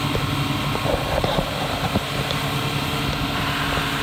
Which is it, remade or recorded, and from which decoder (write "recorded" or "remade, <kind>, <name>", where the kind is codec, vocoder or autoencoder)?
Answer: recorded